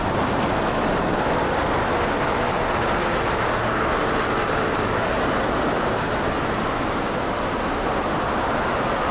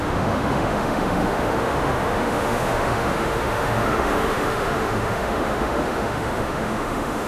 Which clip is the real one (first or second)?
first